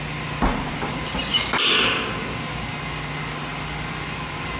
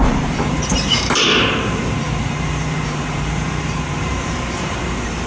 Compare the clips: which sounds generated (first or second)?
second